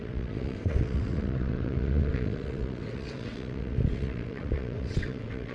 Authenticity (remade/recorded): remade